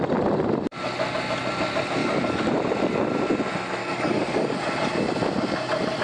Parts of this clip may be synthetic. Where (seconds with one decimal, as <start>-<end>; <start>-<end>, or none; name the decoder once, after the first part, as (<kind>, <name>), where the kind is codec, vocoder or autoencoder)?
2.0-2.5 (codec, DAC); 3.8-4.6